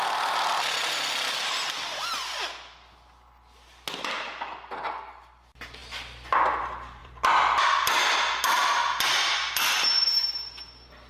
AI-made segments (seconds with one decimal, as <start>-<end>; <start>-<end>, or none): 0.8-1.6; 7.0-8.4